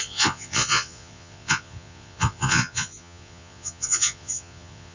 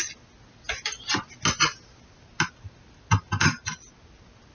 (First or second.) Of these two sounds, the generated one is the first